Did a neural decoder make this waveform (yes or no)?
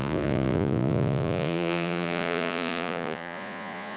yes